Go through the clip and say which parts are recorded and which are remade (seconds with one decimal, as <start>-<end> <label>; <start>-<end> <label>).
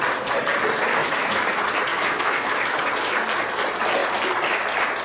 0.0-1.0 recorded; 1.0-1.5 remade; 1.5-1.9 recorded; 1.9-2.9 remade; 2.9-5.0 recorded